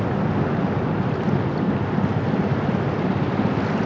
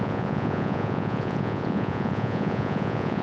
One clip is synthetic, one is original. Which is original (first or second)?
first